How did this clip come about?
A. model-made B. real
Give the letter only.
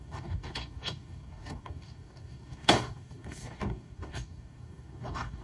A